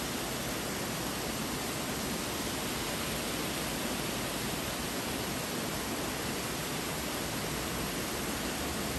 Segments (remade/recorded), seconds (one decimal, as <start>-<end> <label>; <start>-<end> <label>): 0.0-9.0 recorded